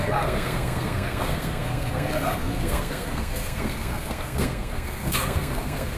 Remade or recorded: remade